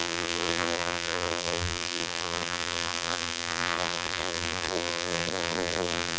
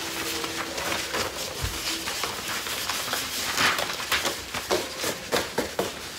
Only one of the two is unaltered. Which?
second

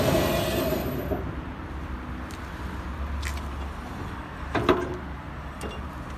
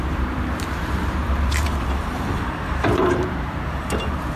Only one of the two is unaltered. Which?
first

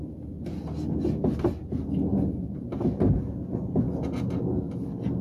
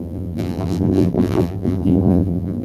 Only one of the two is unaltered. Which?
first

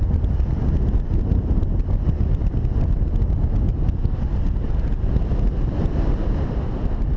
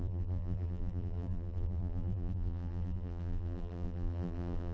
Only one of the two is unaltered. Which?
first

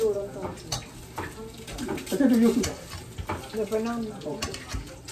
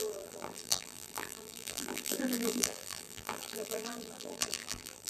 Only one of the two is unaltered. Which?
first